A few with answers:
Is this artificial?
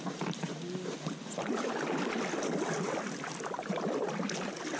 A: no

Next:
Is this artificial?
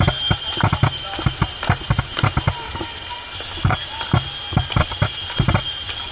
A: no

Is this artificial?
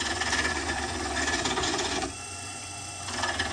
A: yes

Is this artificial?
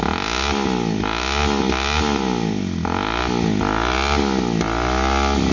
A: no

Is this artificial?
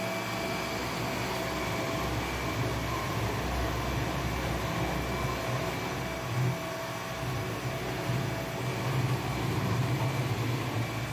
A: no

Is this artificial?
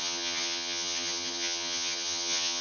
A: yes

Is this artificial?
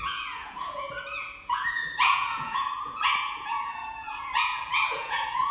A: yes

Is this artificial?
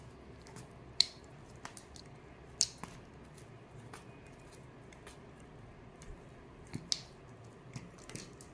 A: no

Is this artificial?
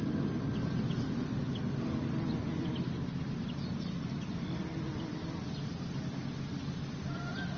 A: no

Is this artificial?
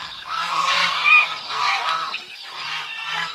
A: yes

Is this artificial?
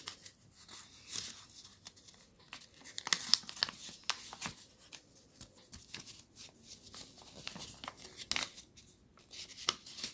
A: no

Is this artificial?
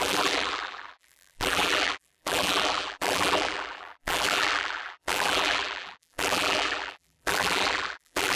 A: yes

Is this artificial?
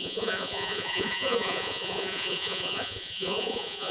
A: yes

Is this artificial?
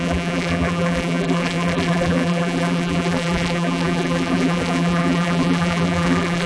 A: yes